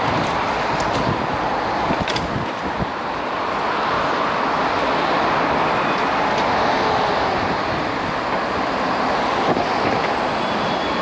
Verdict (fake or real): real